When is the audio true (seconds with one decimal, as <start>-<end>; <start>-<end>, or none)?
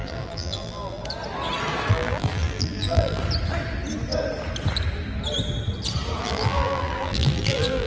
1.0-1.9; 3.2-6.2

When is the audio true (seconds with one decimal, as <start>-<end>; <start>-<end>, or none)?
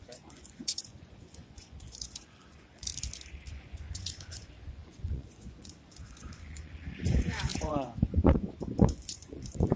2.9-3.5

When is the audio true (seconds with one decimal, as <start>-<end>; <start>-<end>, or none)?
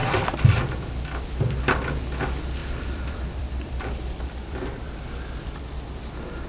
0.6-2.6; 5.6-6.5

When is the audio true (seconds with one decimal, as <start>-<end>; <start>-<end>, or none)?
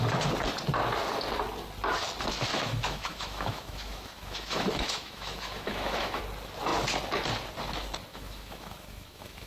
0.0-2.5; 6.2-8.1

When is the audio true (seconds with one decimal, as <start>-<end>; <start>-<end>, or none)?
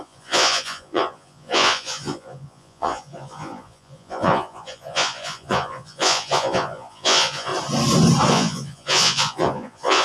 7.5-8.3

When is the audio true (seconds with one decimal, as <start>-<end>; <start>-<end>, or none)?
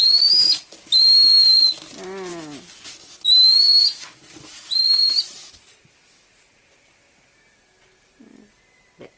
0.0-9.2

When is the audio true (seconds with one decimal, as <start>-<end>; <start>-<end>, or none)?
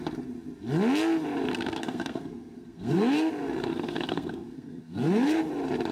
0.0-1.5; 3.3-3.7; 5.4-5.9